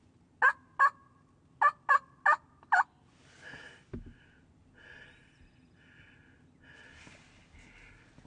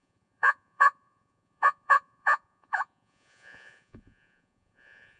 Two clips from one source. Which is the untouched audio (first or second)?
first